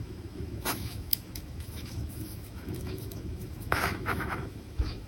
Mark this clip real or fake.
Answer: fake